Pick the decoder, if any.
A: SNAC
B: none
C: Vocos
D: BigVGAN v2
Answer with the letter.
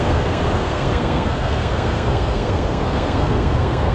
A